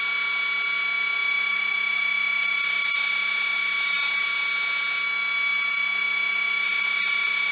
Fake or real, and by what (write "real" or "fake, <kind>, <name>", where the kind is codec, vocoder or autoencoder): real